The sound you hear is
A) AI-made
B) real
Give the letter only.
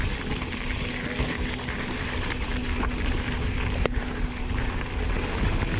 B